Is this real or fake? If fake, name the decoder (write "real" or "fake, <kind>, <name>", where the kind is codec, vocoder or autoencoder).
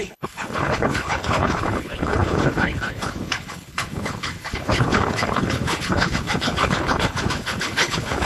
fake, codec, HILCodec